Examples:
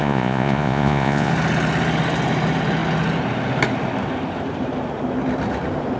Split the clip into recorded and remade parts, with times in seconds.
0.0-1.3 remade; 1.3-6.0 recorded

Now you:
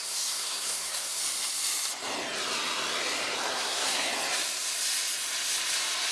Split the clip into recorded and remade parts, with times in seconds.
0.0-1.2 remade; 1.2-3.5 recorded; 3.5-4.1 remade; 4.1-6.1 recorded

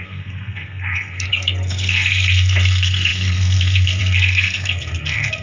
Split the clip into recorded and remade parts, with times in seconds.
0.0-5.4 remade

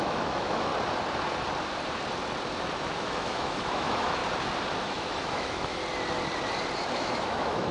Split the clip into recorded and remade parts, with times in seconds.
0.0-0.7 remade; 0.7-2.8 recorded; 2.8-4.2 remade; 4.2-4.8 recorded; 4.8-5.8 remade; 5.8-6.9 recorded; 6.9-7.7 remade